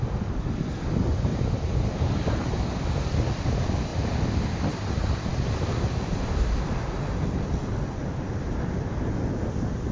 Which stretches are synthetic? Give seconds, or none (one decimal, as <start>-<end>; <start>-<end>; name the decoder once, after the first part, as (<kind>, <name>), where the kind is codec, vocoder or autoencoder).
none